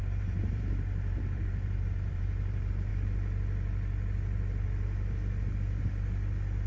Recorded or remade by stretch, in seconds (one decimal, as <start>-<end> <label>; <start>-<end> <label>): 0.0-2.9 remade; 2.9-6.7 recorded